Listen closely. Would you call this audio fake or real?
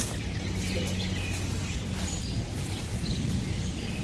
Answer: real